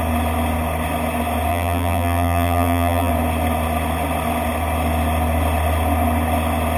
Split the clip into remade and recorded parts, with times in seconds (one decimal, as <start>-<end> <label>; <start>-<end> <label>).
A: 0.0-1.5 recorded; 1.5-3.1 remade; 3.1-6.8 recorded